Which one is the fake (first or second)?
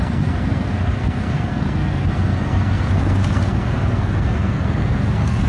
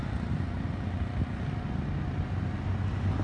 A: first